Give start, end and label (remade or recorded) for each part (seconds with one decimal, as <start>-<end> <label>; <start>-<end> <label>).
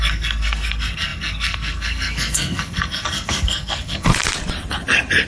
0.0-4.1 remade; 4.1-5.3 recorded